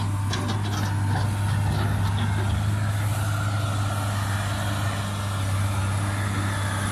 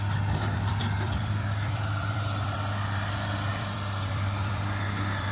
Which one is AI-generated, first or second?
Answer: second